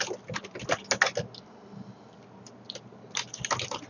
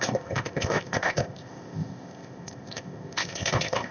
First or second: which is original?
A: first